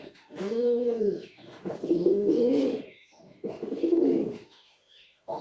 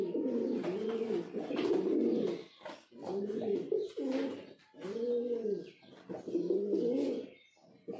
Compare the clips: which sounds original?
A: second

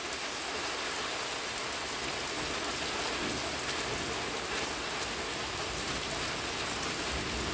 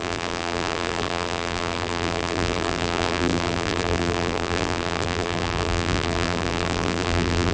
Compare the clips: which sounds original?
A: first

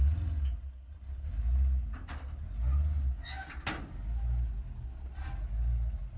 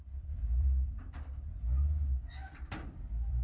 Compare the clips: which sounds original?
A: first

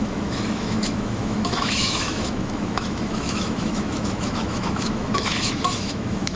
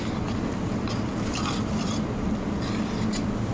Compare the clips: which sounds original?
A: second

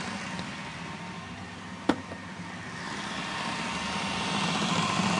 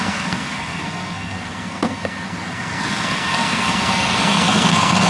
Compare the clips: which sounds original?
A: first